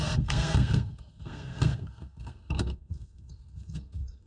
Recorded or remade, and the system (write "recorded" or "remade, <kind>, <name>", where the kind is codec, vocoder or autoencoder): remade, codec, SNAC